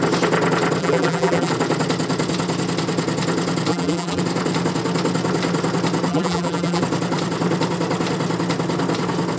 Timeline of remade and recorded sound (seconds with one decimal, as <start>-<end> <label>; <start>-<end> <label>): 0.0-0.8 recorded; 0.8-1.5 remade; 1.5-3.7 recorded; 3.7-4.2 remade; 4.2-6.1 recorded; 6.1-6.8 remade; 6.8-9.4 recorded